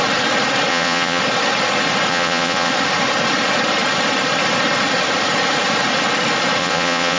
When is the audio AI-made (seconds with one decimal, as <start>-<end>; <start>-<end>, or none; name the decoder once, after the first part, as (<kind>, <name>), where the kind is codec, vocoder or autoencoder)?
0.7-1.2 (vocoder, Vocos); 2.1-2.7; 6.6-7.2